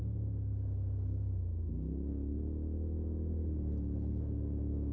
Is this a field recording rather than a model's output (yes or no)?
yes